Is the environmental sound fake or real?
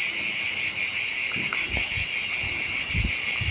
real